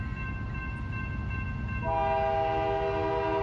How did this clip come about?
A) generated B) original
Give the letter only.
B